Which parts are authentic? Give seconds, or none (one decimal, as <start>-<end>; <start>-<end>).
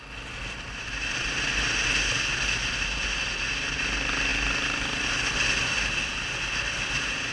0.0-7.3